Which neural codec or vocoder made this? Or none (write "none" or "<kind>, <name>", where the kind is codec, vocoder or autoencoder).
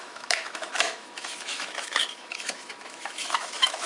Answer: autoencoder, DAC-VAE